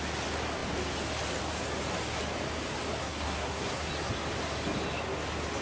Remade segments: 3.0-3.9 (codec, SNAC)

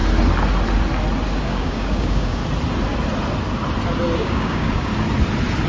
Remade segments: 1.4-2.4 (codec, DAC); 4.2-4.9

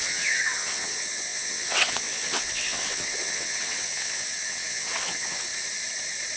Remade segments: 0.0-5.5 (vocoder, WaveNeXt)

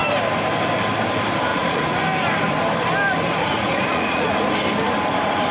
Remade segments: 1.5-2.0 (vocoder, Vocos); 3.4-4.3